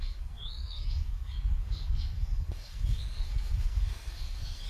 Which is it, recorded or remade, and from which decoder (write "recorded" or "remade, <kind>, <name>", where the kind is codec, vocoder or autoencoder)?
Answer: remade, codec, SNAC